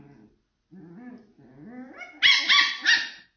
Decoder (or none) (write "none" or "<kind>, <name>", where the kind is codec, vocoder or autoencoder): none